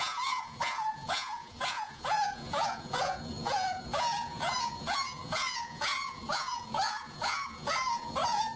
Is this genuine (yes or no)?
no